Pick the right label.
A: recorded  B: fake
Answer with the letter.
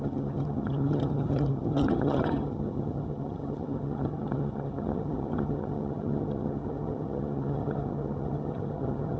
B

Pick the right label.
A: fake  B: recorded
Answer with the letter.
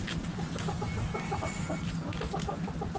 B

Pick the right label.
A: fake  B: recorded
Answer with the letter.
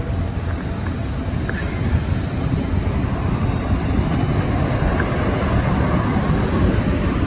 B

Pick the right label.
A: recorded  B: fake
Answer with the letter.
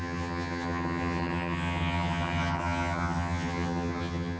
B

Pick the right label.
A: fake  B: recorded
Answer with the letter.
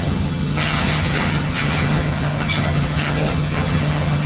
A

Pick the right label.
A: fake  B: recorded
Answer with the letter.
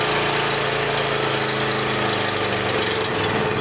B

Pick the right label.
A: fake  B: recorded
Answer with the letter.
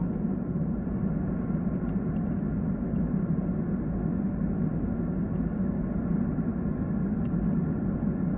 B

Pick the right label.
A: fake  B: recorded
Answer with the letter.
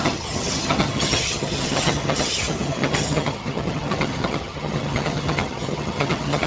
A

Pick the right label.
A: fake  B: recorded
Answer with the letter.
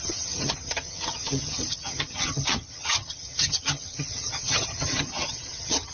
A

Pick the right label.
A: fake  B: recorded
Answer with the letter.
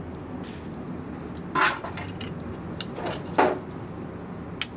B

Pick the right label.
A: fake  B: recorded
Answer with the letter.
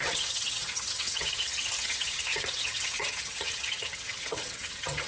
A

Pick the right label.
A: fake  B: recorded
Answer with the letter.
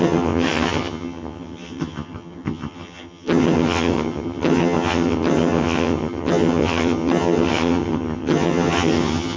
A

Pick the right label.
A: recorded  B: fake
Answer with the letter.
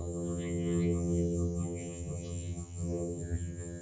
B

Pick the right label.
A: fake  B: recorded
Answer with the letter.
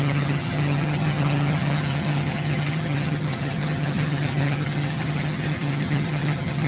A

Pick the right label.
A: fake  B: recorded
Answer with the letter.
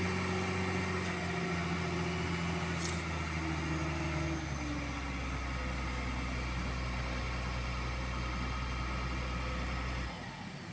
B